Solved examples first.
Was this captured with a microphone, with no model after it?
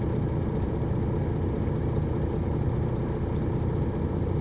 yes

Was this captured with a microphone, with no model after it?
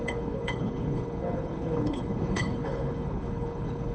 no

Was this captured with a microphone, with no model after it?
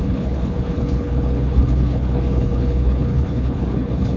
no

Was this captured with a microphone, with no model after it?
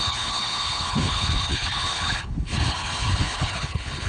no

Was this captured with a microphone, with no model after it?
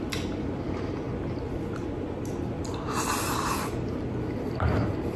yes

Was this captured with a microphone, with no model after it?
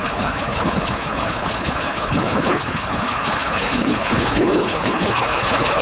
no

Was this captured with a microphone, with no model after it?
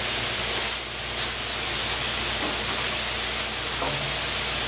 yes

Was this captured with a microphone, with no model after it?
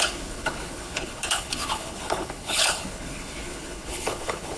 no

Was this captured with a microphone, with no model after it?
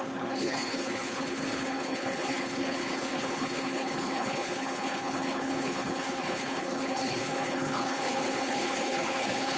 no